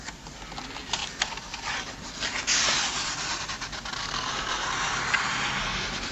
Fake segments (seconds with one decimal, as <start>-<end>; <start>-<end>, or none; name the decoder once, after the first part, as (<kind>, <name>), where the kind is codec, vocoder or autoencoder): 4.0-4.7 (codec, SNAC)